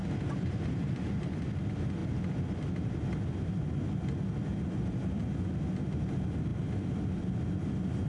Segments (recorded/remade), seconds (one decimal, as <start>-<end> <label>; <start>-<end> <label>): 0.0-1.4 remade; 1.4-2.0 recorded; 2.0-2.6 remade; 2.6-4.5 recorded; 4.5-5.2 remade; 5.2-8.1 recorded